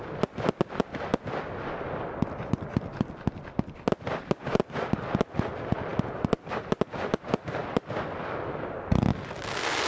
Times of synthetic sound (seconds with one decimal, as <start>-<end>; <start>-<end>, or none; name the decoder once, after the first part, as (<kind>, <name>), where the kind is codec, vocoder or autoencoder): none